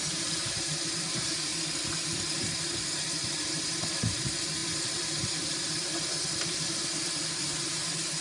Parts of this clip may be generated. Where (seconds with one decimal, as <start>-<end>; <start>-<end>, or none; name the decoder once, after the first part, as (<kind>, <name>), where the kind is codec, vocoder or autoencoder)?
0.0-1.5 (vocoder, BigVGAN v2); 2.1-8.2